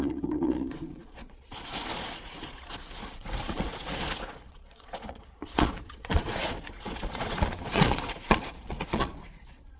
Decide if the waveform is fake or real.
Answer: fake